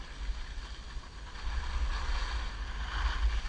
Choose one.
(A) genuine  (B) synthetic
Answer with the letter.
A